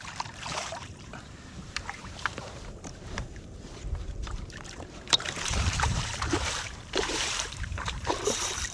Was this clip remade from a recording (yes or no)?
yes